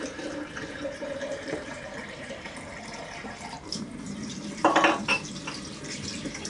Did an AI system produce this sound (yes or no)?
yes